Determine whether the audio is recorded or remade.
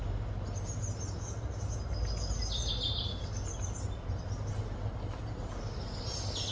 recorded